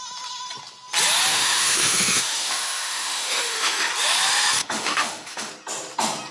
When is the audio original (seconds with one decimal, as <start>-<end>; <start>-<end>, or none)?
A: 0.0-1.3; 3.9-4.6; 5.5-6.3